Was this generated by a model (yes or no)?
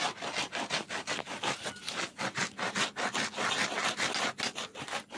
no